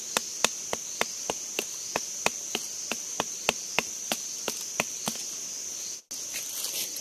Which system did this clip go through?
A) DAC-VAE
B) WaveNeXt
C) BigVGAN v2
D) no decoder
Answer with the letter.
D